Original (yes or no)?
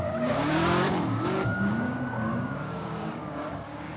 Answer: no